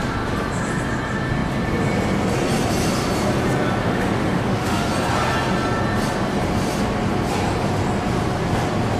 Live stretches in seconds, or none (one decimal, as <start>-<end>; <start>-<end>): 0.0-3.8; 4.9-9.0